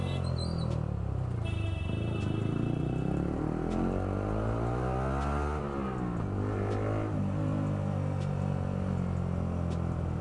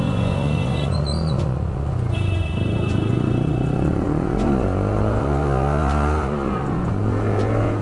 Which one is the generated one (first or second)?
second